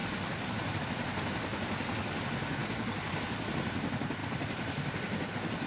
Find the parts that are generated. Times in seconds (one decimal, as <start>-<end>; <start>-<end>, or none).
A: none